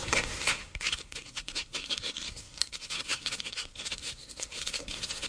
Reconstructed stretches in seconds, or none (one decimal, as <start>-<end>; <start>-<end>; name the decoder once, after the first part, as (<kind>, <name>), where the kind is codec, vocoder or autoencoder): 0.0-5.3 (codec, SNAC)